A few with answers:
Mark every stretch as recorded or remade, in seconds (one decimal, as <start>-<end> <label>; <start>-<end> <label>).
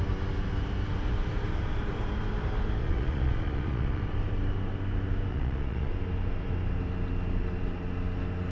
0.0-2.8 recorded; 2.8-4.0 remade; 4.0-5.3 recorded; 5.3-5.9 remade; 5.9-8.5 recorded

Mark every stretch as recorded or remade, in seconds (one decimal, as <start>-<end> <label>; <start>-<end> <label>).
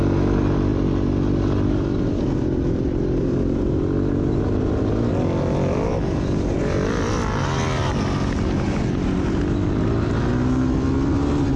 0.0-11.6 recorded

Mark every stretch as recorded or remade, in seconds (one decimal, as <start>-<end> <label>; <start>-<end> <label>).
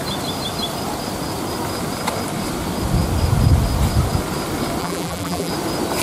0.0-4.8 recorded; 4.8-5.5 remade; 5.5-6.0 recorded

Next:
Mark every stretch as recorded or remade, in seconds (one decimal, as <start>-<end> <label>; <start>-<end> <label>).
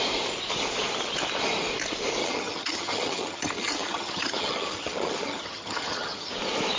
0.0-2.2 recorded; 2.2-6.3 remade; 6.3-6.8 recorded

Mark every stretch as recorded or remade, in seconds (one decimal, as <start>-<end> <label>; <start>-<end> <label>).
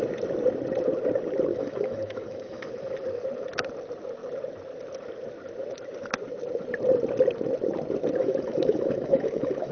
0.0-1.5 recorded; 1.5-2.7 remade; 2.7-8.2 recorded; 8.2-9.7 remade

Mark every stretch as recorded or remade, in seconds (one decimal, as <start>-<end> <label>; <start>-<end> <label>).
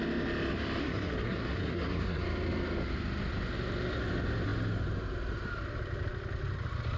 0.0-0.8 recorded; 0.8-2.2 remade; 2.2-7.0 recorded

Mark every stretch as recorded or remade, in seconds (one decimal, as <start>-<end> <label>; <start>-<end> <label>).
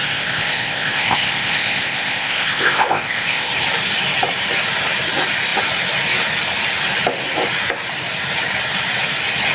0.0-3.5 remade; 3.5-9.5 recorded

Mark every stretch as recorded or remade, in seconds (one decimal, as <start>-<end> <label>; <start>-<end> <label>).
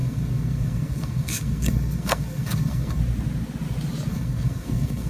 0.0-3.0 remade; 3.0-4.1 recorded; 4.1-5.1 remade